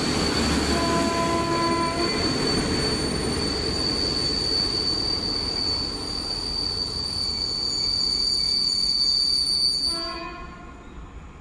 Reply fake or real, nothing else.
real